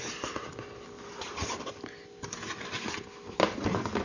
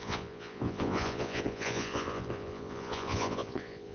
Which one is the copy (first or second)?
second